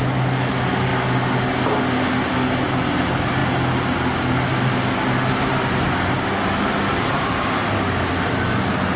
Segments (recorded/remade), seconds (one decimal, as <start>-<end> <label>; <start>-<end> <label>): 0.0-9.0 recorded